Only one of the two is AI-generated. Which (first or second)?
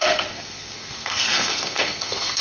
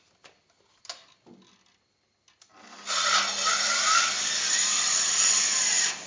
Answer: first